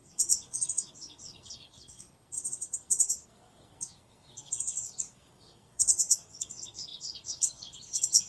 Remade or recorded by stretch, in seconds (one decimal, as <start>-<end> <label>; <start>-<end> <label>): 0.0-8.3 remade